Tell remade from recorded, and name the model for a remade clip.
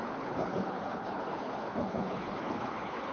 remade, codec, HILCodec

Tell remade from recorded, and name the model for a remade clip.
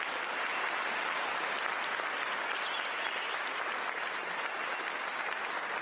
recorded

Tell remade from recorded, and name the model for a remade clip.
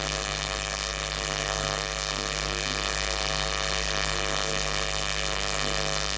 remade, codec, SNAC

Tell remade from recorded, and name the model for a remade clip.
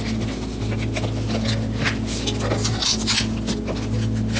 recorded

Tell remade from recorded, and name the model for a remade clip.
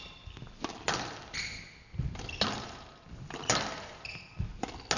recorded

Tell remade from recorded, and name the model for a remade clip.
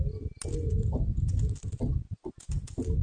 recorded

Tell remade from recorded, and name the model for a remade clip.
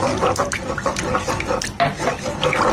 recorded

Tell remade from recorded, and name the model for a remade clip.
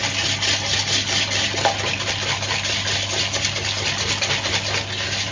recorded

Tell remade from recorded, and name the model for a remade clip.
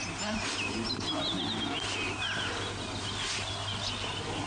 recorded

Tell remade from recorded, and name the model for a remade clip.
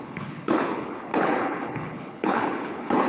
remade, codec, HILCodec